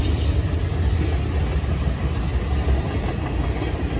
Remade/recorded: recorded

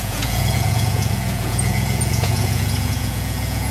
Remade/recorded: remade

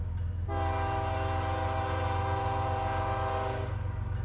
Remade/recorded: recorded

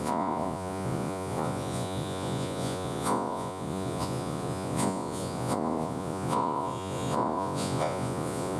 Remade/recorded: remade